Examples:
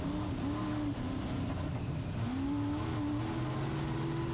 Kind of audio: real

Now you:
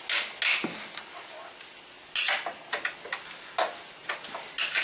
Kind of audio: real